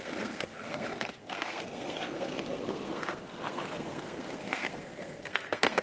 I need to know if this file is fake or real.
fake